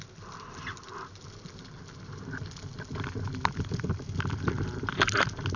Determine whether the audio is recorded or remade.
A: recorded